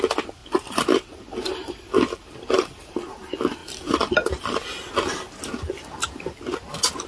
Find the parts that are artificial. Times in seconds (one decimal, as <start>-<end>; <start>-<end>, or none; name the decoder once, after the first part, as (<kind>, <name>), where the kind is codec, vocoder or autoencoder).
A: none